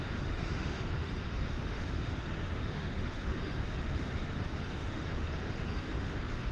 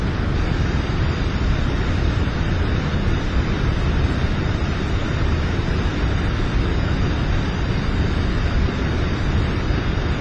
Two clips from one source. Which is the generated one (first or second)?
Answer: first